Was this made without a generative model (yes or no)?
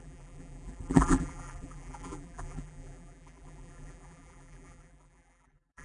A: no